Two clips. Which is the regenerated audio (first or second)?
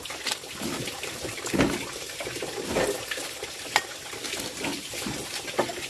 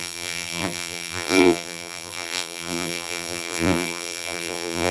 second